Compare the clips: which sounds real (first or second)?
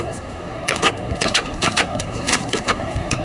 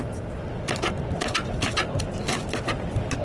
second